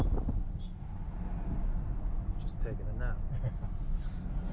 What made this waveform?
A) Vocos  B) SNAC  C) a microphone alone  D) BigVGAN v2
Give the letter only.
C